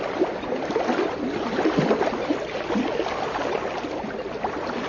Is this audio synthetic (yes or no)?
no